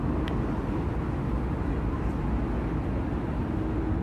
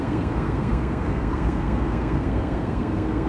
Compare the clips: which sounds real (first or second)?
first